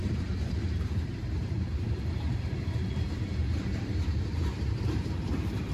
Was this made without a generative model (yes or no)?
no